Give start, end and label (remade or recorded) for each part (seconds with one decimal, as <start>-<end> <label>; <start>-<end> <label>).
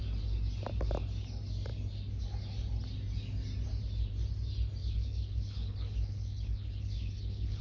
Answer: 0.0-4.8 recorded; 4.8-7.6 remade